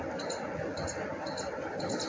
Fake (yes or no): no